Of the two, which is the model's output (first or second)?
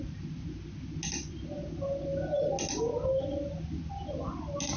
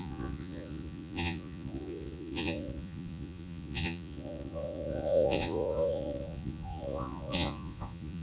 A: second